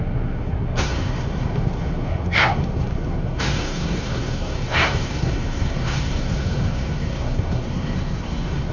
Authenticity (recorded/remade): remade